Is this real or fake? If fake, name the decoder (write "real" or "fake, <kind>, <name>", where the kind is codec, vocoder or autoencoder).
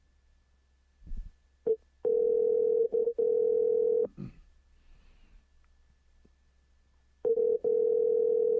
real